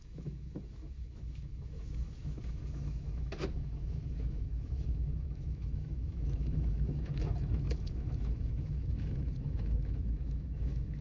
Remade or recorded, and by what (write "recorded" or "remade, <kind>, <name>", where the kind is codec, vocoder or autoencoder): remade, autoencoder, DAC-VAE